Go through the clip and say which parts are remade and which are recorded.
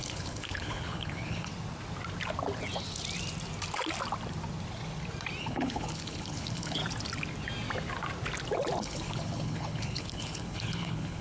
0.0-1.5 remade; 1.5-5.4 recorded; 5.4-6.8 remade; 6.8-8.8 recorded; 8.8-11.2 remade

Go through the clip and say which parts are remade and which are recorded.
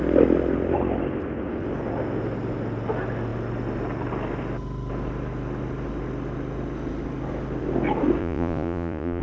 0.0-8.2 recorded; 8.2-9.2 remade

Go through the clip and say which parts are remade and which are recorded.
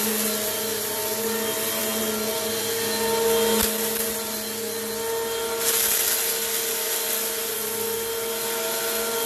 0.0-9.3 recorded